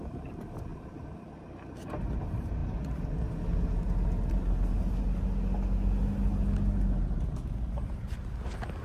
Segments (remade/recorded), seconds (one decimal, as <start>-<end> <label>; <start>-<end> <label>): 0.0-0.7 recorded; 0.7-1.3 remade; 1.3-8.8 recorded